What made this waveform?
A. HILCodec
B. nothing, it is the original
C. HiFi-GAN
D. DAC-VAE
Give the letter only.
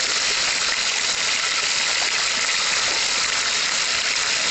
B